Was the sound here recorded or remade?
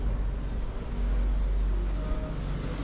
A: recorded